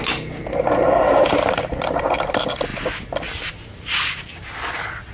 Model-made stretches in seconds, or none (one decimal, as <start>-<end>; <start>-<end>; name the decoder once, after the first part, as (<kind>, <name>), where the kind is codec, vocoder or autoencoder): none